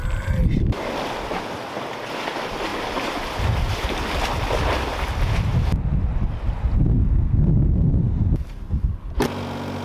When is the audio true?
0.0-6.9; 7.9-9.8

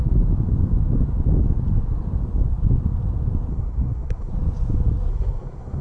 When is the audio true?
0.0-3.5; 4.3-5.1

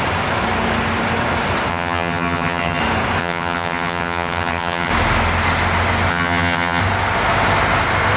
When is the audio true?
0.0-1.7; 2.8-3.2; 4.9-6.1; 6.8-8.2

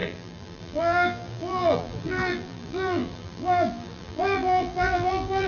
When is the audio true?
none

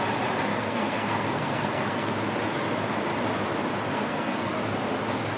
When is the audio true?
0.0-0.5; 2.1-3.9; 4.5-5.4

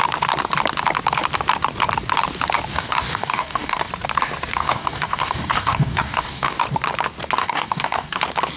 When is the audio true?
0.0-2.7; 3.9-4.6; 6.6-7.4; 8.2-8.6

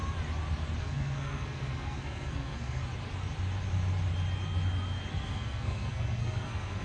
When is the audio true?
0.0-0.8; 2.8-5.1

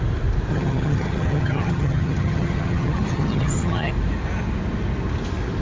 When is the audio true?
0.0-0.5; 3.9-5.6